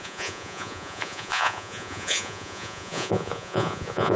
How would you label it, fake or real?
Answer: fake